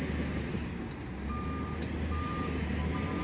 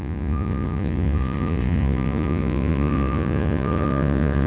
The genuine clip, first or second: first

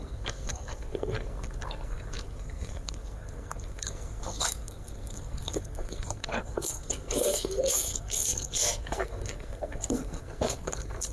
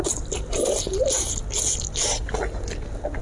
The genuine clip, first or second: second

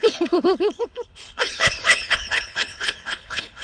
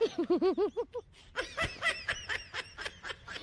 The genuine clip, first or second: second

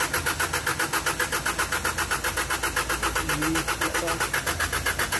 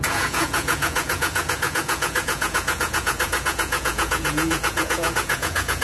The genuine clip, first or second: first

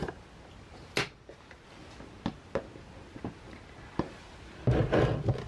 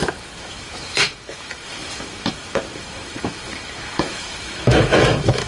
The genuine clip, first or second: first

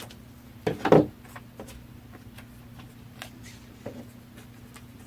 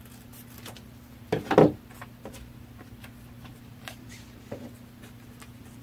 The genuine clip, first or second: first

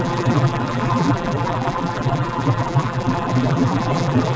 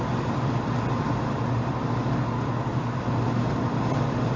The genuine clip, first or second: second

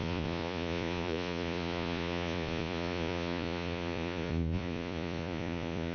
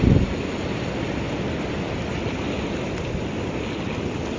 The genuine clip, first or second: second